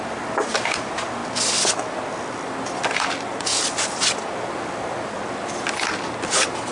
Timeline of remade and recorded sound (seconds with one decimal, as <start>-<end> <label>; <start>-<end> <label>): 0.0-6.7 recorded